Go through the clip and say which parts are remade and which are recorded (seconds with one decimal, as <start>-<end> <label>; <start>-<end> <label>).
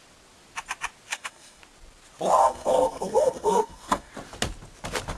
0.0-1.1 recorded; 1.1-1.6 remade; 1.6-2.4 recorded; 2.4-4.1 remade; 4.1-5.2 recorded